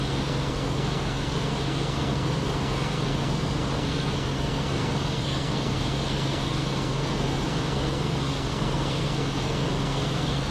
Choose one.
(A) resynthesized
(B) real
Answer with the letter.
A